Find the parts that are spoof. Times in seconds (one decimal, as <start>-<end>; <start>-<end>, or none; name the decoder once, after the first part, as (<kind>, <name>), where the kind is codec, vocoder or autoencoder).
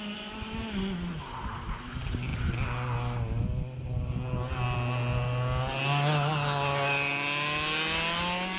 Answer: none